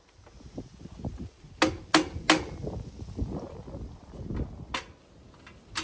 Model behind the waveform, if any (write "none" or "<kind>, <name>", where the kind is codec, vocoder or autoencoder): none